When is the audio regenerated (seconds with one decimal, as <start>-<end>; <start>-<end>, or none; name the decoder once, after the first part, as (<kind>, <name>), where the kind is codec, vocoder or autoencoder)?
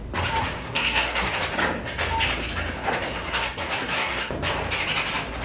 0.4-1.3 (codec, SNAC); 2.8-4.3